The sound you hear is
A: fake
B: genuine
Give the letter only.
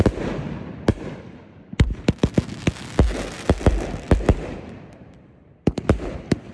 B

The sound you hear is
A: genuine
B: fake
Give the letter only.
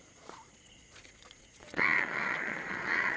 B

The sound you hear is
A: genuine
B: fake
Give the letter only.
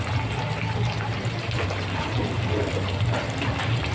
A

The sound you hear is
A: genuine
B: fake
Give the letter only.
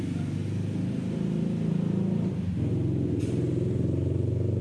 A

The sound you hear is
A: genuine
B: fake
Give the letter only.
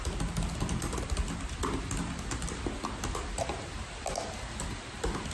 A